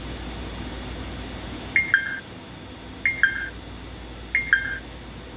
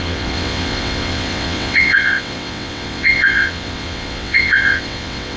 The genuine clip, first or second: first